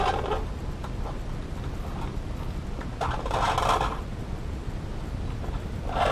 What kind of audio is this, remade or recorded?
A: recorded